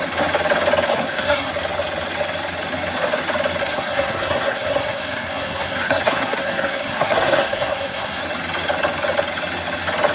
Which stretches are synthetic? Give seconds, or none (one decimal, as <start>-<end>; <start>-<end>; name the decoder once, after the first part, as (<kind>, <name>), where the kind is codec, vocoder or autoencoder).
0.9-1.5 (codec, SNAC); 3.6-8.2